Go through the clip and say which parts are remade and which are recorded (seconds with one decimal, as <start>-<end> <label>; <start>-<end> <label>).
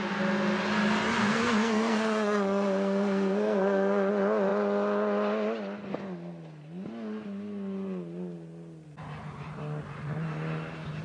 0.0-1.2 recorded; 1.2-4.1 remade; 4.1-11.0 recorded